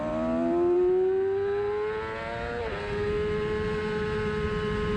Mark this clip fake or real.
real